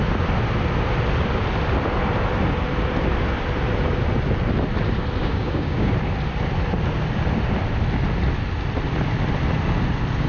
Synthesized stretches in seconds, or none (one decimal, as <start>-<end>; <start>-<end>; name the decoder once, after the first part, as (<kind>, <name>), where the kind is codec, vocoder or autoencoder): 5.2-5.9 (codec, DAC)